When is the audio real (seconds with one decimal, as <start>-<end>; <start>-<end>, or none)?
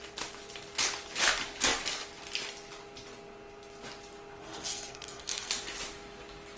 0.0-4.4; 5.5-6.6